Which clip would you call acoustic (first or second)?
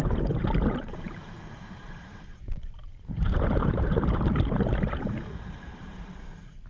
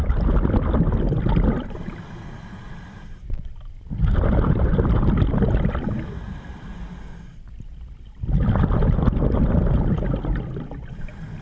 second